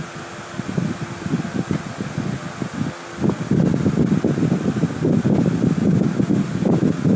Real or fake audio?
real